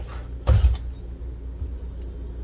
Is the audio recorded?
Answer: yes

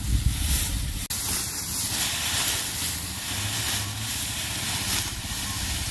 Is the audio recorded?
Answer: yes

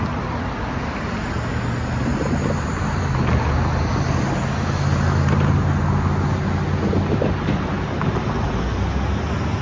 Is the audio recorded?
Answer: yes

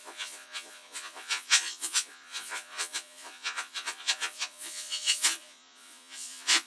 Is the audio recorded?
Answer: no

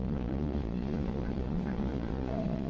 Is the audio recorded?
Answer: no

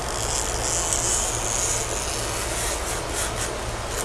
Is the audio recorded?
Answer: yes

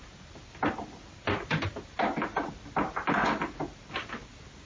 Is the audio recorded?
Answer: yes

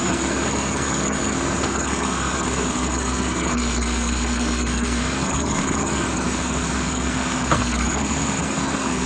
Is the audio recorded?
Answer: no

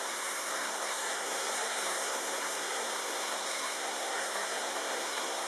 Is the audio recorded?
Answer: no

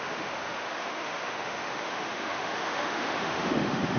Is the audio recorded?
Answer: no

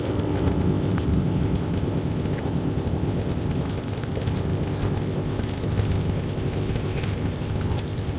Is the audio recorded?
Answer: no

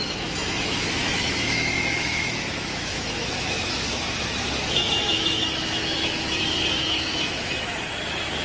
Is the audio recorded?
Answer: no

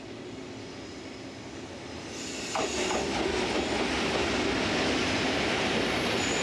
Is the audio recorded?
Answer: yes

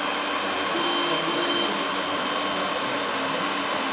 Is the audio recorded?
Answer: yes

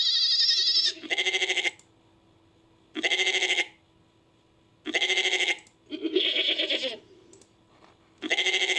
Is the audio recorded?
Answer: yes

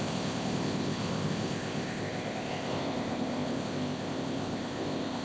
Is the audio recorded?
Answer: no